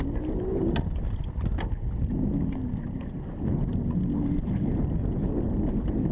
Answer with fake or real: real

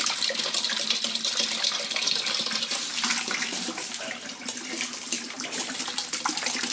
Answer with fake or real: real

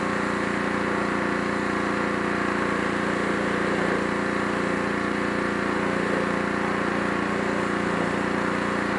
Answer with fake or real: real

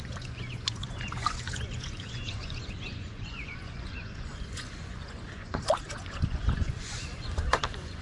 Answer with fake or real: fake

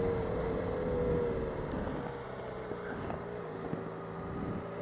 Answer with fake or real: real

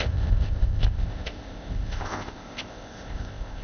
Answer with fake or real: fake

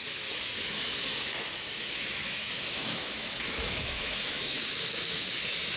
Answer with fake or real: fake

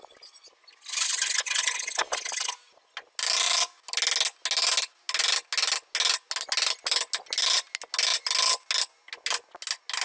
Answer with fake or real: real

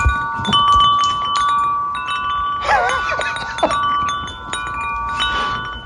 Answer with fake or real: real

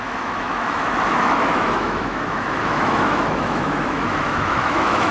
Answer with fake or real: fake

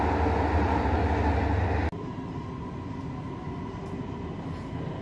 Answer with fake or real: real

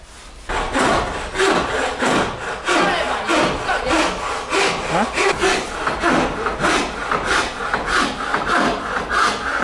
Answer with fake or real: real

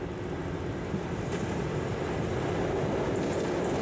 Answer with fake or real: real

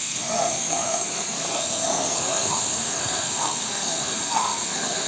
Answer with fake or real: fake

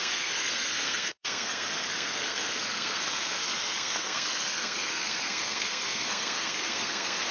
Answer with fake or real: fake